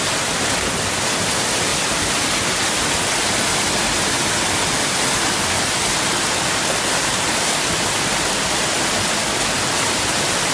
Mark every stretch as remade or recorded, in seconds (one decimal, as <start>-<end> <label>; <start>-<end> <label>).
0.0-1.7 recorded; 1.7-2.3 remade; 2.3-10.5 recorded

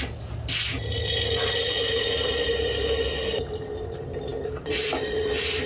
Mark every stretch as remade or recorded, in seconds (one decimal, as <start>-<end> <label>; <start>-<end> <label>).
0.0-5.7 recorded

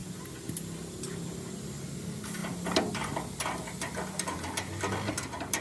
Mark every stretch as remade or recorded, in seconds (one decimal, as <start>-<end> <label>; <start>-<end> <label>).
0.0-5.6 recorded

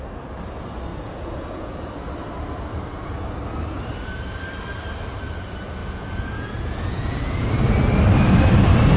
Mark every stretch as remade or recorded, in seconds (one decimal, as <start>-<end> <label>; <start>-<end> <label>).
0.0-0.9 recorded; 0.9-1.9 remade; 1.9-5.8 recorded; 5.8-7.5 remade; 7.5-9.0 recorded

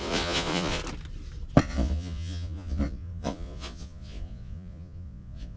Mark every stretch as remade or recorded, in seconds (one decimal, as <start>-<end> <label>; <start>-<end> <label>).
0.0-0.8 remade; 0.8-1.6 recorded; 1.6-5.6 remade

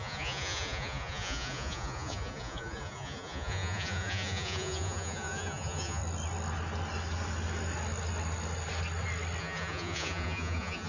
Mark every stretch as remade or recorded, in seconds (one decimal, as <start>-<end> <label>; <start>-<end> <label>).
0.0-6.0 remade; 6.0-9.4 recorded; 9.4-10.9 remade

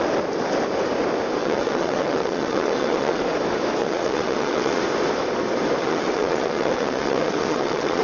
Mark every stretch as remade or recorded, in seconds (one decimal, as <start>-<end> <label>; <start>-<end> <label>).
0.0-1.4 recorded; 1.4-3.2 remade; 3.2-3.8 recorded; 3.8-4.8 remade; 4.8-5.8 recorded; 5.8-8.0 remade

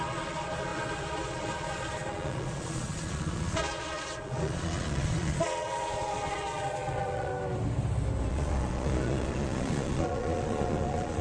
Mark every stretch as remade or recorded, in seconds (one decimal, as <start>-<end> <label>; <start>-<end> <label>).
0.0-7.3 remade; 7.3-8.3 recorded; 8.3-11.2 remade